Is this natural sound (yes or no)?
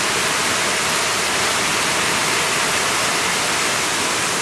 yes